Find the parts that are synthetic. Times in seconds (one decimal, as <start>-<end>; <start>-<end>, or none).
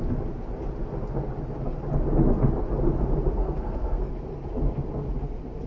3.4-4.1